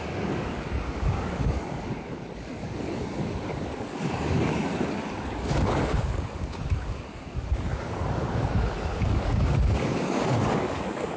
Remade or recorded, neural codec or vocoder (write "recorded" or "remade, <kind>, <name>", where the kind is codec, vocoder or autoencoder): remade, codec, DAC